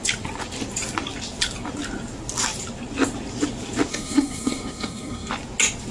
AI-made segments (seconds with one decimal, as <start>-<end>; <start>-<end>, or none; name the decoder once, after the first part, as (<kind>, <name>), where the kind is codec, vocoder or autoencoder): 3.9-5.3 (codec, SNAC)